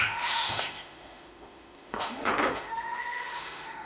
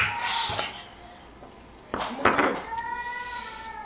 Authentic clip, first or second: second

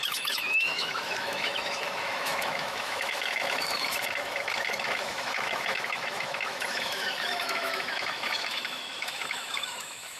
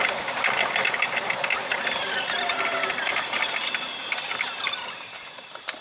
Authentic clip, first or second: second